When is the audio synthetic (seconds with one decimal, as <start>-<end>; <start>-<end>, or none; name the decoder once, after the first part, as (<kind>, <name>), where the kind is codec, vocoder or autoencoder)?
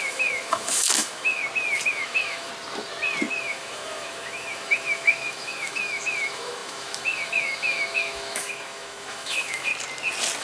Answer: 0.0-1.4 (autoencoder, DAC-VAE); 1.9-2.5; 3.4-9.7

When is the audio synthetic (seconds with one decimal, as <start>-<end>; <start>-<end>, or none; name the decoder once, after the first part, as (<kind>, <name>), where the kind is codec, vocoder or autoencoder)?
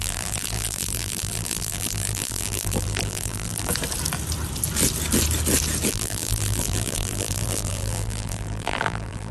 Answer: 0.0-3.7 (vocoder, BigVGAN v2); 5.9-9.3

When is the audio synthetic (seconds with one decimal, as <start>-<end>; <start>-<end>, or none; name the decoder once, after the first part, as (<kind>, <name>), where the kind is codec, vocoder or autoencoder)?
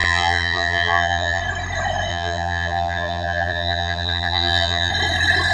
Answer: 0.0-1.4 (vocoder, BigVGAN v2); 2.1-4.9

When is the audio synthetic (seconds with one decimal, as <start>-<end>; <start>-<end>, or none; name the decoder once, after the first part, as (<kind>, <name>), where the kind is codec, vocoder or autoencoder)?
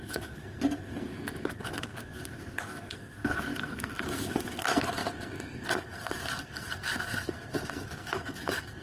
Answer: 0.0-8.8 (codec, SNAC)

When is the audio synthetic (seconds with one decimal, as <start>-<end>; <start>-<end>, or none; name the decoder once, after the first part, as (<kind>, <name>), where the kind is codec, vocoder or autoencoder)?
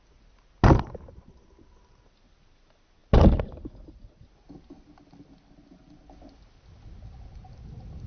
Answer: none